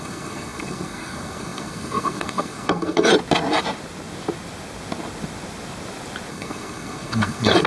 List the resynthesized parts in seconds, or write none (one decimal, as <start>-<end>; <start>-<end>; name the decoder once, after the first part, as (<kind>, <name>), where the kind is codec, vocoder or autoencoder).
0.0-3.1 (codec, SNAC); 6.3-7.7